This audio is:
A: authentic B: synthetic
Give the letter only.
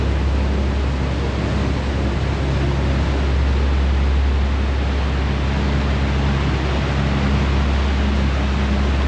A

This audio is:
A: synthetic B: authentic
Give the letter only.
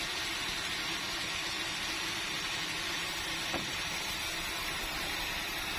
A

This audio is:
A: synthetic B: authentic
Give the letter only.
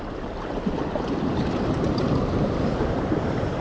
A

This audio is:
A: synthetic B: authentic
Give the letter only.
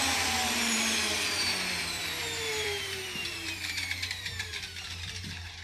A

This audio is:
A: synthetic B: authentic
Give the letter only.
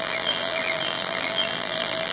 A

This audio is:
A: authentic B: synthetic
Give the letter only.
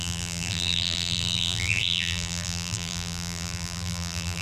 B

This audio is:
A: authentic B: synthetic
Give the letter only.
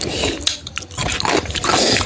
A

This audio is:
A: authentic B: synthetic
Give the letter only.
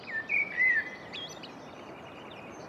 B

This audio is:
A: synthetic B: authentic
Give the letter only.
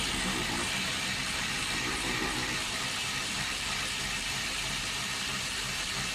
A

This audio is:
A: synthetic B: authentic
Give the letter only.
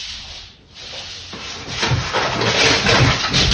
B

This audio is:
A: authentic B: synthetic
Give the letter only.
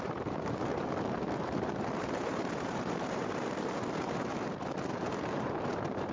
B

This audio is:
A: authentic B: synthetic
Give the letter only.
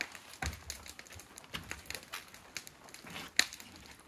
A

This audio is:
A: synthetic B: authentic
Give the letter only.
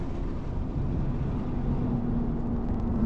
B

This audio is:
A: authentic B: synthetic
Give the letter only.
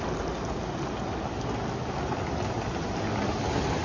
A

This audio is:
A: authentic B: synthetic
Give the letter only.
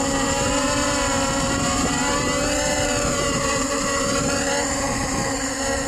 B